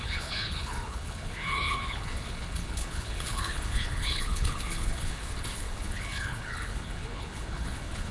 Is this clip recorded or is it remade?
remade